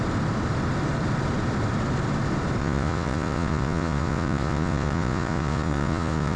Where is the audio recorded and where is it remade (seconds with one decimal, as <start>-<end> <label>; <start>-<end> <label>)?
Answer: 0.0-2.6 recorded; 2.6-6.4 remade